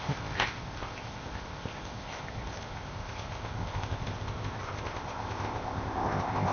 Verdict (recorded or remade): remade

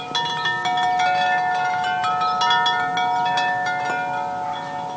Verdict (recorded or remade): recorded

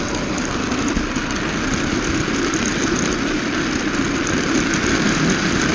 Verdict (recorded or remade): recorded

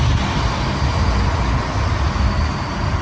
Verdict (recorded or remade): recorded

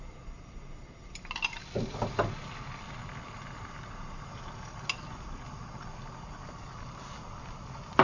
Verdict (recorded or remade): recorded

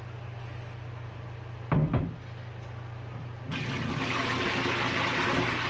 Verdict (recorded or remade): recorded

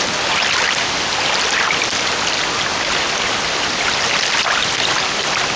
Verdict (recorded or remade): recorded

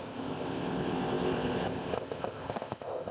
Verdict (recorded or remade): remade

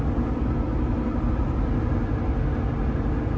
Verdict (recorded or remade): recorded